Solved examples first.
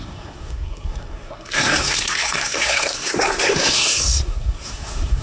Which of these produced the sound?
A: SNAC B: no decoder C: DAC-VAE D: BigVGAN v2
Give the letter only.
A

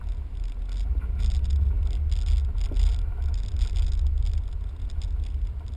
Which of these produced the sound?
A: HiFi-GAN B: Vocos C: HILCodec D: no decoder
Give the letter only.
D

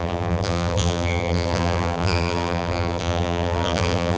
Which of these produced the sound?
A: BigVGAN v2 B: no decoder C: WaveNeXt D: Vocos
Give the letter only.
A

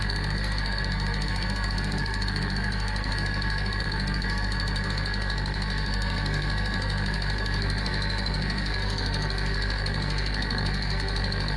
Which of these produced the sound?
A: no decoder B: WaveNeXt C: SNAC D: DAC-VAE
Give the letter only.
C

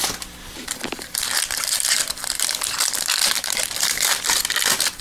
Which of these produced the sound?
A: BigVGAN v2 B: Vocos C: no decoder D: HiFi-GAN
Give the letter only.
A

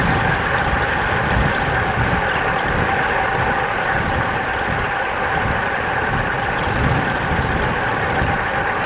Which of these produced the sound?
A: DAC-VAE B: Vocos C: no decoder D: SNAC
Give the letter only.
C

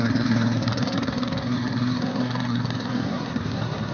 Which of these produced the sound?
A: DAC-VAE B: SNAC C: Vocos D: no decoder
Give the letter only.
B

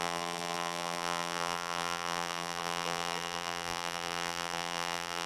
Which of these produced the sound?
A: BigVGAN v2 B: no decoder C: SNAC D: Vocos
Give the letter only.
A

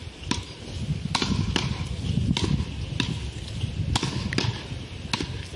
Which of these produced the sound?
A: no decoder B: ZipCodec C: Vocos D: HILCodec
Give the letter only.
A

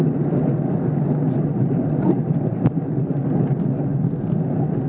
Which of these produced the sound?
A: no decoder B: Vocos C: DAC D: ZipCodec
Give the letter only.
A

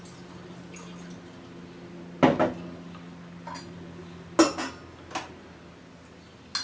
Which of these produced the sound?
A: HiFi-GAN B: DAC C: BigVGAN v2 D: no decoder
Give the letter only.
D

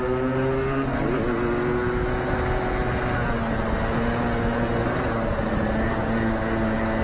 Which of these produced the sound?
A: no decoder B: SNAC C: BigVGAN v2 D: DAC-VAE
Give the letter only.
A